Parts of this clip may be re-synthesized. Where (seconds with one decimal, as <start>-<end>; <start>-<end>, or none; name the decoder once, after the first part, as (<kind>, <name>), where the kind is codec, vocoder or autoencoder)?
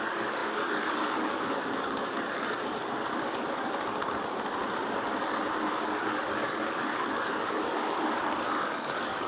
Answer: 0.0-2.8 (codec, DAC); 6.0-9.3